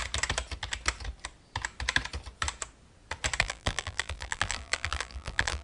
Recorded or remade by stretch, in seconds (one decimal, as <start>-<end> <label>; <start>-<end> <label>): 0.0-3.4 recorded; 3.4-5.6 remade